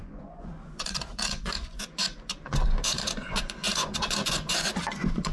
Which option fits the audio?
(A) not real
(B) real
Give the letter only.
A